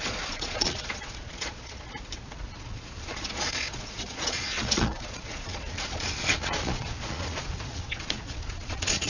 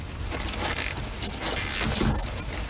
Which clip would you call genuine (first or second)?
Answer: second